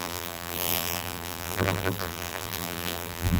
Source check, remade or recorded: remade